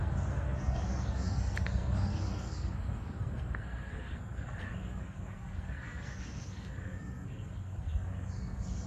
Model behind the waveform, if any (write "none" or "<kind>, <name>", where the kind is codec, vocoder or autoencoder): codec, SNAC